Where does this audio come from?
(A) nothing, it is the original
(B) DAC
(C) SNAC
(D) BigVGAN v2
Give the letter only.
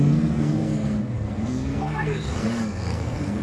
C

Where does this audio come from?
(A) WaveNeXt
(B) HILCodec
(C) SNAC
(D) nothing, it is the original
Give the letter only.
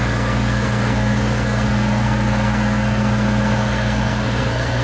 C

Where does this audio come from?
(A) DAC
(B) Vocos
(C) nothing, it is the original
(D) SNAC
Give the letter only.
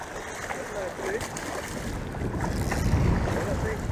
C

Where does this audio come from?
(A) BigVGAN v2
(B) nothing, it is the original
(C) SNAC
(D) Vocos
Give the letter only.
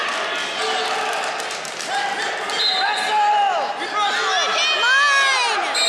B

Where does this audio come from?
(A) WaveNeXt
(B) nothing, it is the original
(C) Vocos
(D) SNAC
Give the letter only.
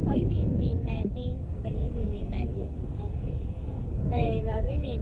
D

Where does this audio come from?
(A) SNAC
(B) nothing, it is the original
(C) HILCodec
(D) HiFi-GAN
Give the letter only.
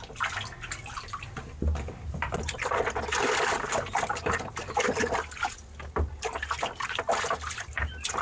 B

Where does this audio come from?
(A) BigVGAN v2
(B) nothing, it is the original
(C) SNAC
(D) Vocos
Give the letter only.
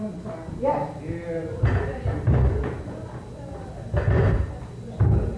B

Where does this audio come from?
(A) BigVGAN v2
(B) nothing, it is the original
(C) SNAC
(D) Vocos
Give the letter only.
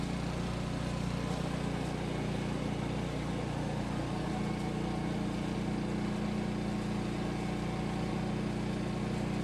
B